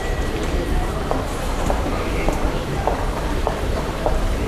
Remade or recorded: remade